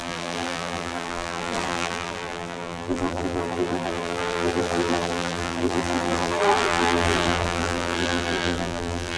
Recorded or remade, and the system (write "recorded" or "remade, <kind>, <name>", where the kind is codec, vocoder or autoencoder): remade, vocoder, BigVGAN v2